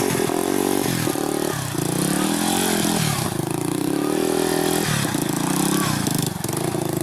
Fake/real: real